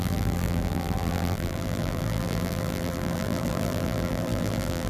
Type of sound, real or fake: fake